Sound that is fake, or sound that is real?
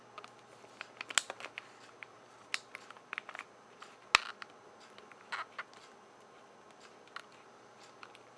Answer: real